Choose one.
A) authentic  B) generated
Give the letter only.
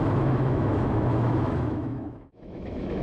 B